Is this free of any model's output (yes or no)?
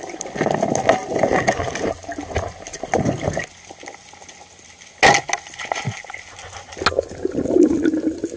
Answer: yes